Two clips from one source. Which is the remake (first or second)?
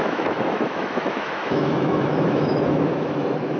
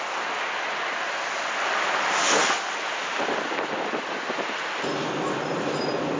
first